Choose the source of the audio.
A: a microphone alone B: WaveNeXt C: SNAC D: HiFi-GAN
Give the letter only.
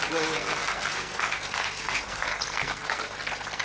C